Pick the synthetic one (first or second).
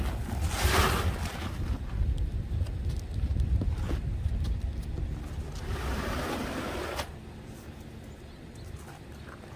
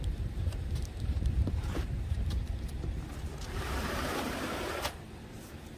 second